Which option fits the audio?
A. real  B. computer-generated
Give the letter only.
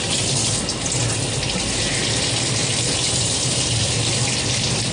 A